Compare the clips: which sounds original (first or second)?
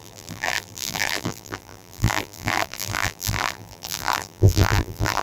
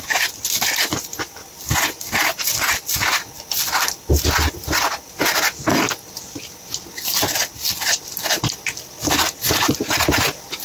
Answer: second